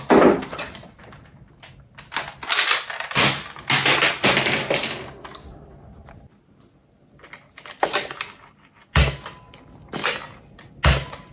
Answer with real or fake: real